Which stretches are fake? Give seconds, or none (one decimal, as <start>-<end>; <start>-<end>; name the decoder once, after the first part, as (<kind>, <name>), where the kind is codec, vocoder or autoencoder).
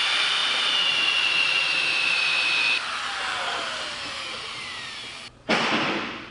0.4-2.2 (vocoder, BigVGAN v2); 3.3-5.1